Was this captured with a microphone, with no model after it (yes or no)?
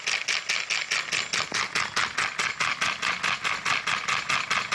yes